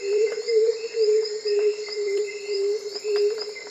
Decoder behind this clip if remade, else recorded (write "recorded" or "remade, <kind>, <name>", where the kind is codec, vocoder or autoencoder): remade, vocoder, BigVGAN v2